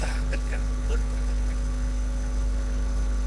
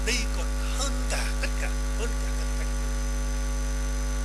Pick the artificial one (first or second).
first